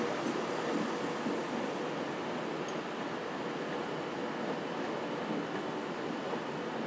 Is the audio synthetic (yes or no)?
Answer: no